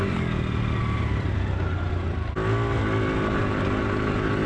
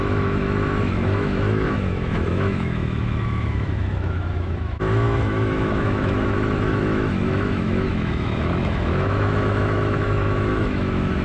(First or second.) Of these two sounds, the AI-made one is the second